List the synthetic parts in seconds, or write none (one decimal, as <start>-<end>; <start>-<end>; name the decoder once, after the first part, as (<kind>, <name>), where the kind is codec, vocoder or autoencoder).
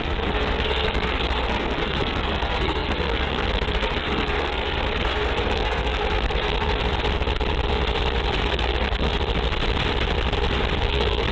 0.0-6.8 (codec, SNAC); 8.5-9.1; 10.8-11.3